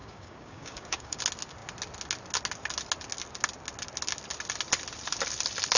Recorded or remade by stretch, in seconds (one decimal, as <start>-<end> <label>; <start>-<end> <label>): 0.0-1.2 remade; 1.2-5.8 recorded

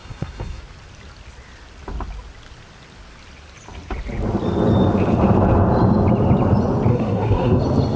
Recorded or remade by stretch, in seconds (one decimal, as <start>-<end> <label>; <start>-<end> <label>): 0.0-0.6 remade; 0.6-6.9 recorded; 6.9-7.6 remade; 7.6-8.0 recorded